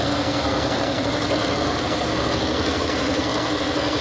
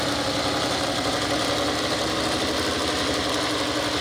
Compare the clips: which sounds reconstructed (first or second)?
first